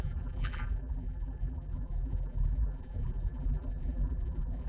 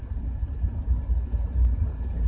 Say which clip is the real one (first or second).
second